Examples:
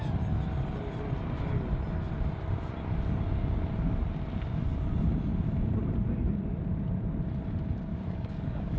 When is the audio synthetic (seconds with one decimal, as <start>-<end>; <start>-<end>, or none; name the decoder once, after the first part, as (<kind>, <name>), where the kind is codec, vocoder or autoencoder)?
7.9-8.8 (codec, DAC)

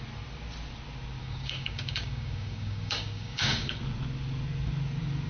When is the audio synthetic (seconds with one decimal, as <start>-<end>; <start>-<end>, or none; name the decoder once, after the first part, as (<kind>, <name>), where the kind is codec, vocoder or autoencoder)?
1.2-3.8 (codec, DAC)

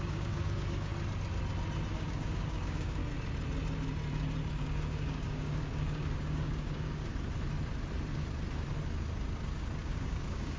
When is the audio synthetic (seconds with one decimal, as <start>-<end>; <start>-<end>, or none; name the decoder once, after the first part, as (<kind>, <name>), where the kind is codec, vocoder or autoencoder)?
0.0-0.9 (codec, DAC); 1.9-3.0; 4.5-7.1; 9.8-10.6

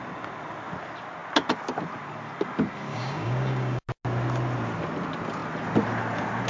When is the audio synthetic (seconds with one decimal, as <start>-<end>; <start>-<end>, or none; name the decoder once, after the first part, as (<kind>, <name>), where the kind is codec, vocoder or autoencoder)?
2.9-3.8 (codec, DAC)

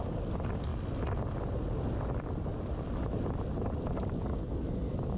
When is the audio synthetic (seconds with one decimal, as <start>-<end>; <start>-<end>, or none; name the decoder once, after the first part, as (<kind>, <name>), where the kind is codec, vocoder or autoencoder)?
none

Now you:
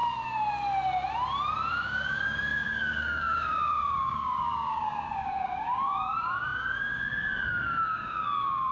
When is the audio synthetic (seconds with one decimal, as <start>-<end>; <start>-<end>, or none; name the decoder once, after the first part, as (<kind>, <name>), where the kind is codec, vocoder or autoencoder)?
1.7-8.7 (codec, DAC)

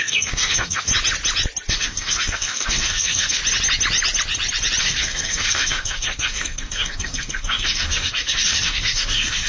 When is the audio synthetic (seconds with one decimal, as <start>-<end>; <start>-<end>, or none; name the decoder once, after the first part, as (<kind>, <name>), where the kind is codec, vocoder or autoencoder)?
0.0-0.9 (codec, DAC); 1.7-3.4; 4.8-9.5